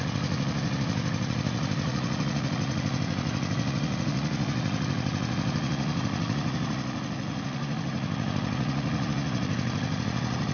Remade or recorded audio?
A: remade